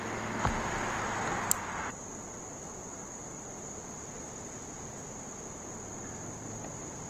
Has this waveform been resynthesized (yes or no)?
no